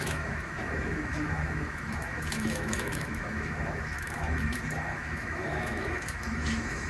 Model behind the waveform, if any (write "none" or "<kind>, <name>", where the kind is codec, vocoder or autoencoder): autoencoder, DAC-VAE